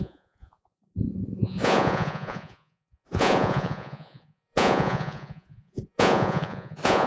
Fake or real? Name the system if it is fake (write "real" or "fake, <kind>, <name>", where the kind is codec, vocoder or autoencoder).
fake, vocoder, Vocos